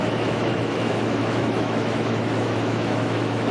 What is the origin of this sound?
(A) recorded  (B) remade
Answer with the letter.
B